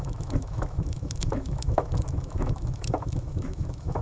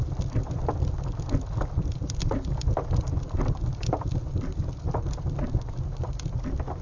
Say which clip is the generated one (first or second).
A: first